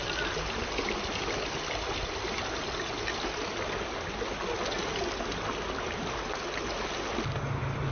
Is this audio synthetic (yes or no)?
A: no